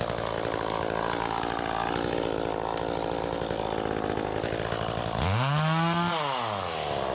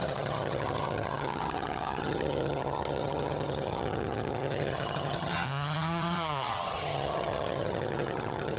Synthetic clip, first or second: second